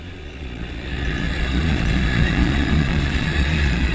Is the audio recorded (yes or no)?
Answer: no